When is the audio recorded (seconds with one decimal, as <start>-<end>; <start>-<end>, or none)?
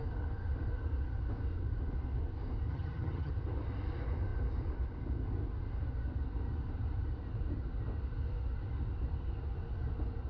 0.0-2.7; 3.3-10.3